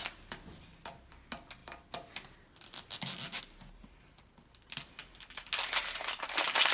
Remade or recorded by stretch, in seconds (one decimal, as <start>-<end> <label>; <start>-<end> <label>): 0.0-6.7 recorded

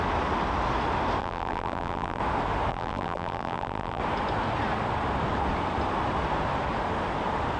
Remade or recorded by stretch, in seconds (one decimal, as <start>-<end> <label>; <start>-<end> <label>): 0.0-1.2 recorded; 1.2-2.2 remade; 2.2-2.7 recorded; 2.7-4.0 remade; 4.0-7.6 recorded

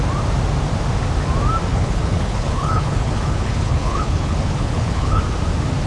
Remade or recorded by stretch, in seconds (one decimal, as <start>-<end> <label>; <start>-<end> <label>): 0.0-1.7 recorded; 1.7-5.2 remade; 5.2-5.9 recorded

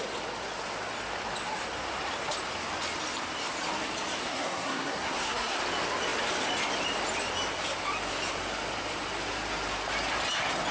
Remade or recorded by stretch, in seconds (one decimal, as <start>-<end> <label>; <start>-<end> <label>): 0.0-4.2 recorded; 4.2-5.6 remade; 5.6-10.7 recorded